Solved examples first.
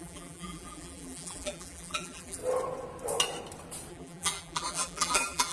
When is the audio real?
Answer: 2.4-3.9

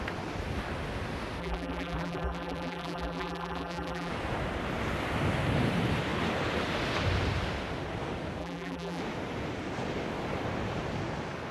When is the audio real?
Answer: 0.0-1.4; 4.1-8.4; 9.0-11.5

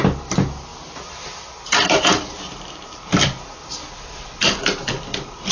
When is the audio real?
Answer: 0.0-0.7; 2.0-3.1; 4.3-5.5

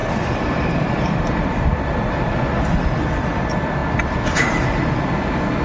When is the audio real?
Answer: 3.4-5.6

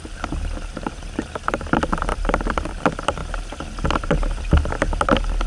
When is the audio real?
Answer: 0.0-2.1; 2.8-5.5

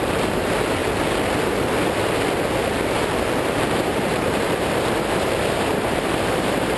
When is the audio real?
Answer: 0.8-3.4

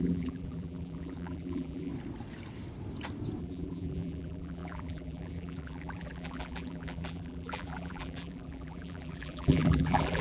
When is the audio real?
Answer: 1.9-3.4